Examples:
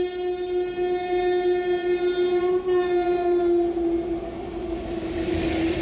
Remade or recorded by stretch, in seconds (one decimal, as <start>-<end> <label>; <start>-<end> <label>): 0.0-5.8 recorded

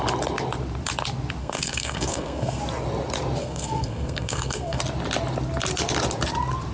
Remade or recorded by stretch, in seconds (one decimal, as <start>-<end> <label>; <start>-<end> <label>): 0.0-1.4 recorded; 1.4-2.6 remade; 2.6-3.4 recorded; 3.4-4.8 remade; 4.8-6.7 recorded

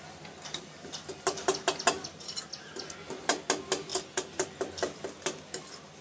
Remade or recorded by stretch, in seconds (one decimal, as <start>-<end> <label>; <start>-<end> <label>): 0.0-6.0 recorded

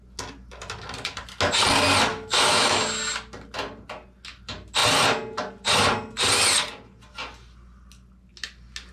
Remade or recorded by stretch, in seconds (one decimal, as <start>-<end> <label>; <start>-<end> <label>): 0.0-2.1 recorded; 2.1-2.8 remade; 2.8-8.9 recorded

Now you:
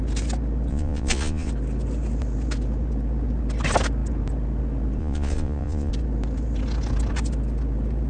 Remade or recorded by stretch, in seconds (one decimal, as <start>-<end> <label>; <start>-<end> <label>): 0.0-0.7 recorded; 0.7-1.5 remade; 1.5-5.0 recorded; 5.0-5.9 remade; 5.9-8.1 recorded

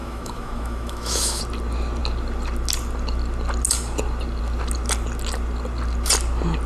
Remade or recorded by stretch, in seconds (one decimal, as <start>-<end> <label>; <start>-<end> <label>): 0.0-1.4 remade; 1.4-6.7 recorded

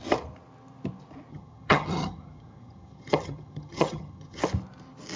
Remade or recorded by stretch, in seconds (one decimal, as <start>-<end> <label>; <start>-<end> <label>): 0.0-1.3 recorded; 1.3-4.4 remade; 4.4-5.2 recorded